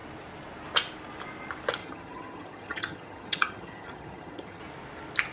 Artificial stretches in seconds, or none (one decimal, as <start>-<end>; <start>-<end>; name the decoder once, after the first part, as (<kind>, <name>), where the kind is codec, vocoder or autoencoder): 1.8-4.6 (vocoder, HiFi-GAN)